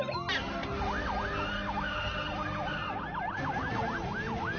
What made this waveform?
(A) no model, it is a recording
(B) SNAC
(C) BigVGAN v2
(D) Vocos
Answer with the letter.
A